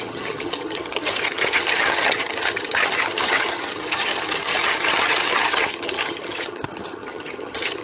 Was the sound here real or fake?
fake